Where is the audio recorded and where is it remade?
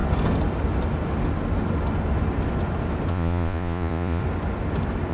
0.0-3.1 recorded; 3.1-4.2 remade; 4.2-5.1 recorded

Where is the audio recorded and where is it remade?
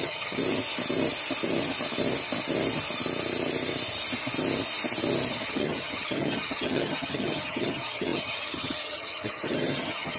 0.0-0.4 remade; 0.4-5.3 recorded; 5.3-10.2 remade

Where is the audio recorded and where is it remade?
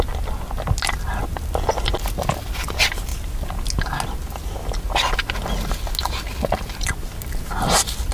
0.0-8.1 recorded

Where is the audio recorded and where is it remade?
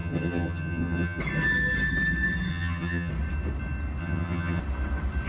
0.0-1.2 remade; 1.2-2.5 recorded; 2.5-3.1 remade; 3.1-4.0 recorded; 4.0-4.6 remade; 4.6-5.3 recorded